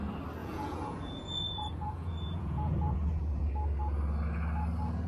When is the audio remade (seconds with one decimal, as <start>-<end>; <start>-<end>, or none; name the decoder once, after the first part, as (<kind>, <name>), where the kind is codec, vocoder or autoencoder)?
0.4-3.5 (vocoder, Vocos)